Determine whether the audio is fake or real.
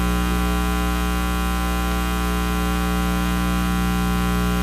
real